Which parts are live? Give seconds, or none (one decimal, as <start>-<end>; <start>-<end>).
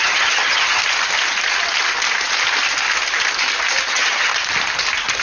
0.8-3.9; 4.3-5.2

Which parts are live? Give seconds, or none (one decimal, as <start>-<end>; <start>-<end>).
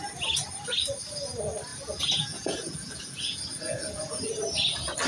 0.0-1.7; 4.2-5.1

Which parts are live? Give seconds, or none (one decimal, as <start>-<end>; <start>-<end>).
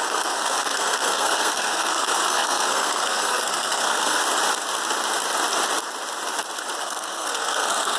4.2-6.8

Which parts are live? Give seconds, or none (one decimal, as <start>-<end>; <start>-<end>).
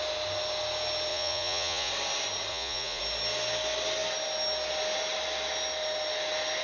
0.0-1.1; 1.9-2.5; 3.0-6.6